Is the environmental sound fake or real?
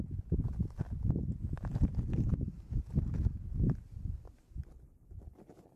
real